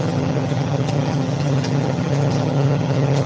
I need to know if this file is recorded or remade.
remade